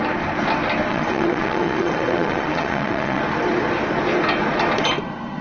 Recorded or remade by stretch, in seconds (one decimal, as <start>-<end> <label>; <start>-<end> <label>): 0.0-0.9 recorded; 0.9-3.2 remade; 3.2-5.4 recorded

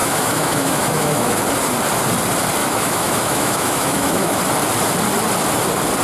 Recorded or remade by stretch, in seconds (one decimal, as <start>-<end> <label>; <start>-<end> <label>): 0.0-1.4 remade; 1.4-2.6 recorded; 2.6-4.4 remade; 4.4-6.0 recorded

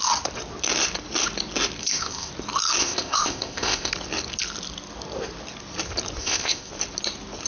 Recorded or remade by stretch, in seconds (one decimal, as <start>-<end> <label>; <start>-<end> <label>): 0.0-1.8 recorded; 1.8-2.3 remade; 2.3-2.8 recorded; 2.8-3.9 remade; 3.9-6.2 recorded; 6.2-6.7 remade; 6.7-7.5 recorded

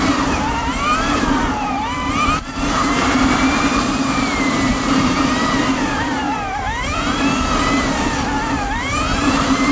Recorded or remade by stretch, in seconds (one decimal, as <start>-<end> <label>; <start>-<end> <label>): 0.0-7.3 remade; 7.3-8.5 recorded; 8.5-9.7 remade

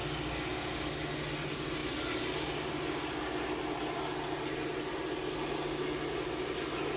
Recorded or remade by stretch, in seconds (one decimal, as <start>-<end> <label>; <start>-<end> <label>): 0.0-7.0 recorded